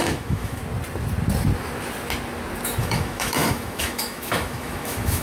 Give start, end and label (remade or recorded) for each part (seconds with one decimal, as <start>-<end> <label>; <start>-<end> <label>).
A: 0.0-0.6 remade; 0.6-2.8 recorded; 2.8-5.2 remade

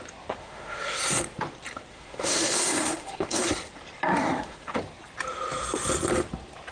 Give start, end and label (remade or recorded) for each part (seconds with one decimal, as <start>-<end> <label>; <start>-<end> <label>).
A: 0.0-0.4 recorded; 0.4-1.0 remade; 1.0-1.9 recorded; 1.9-3.5 remade; 3.5-4.1 recorded; 4.1-4.8 remade; 4.8-6.7 recorded